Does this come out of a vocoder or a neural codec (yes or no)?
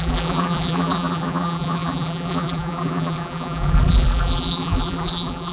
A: yes